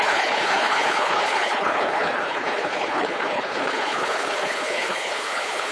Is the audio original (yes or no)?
no